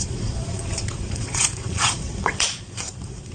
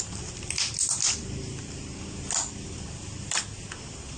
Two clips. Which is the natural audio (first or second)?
second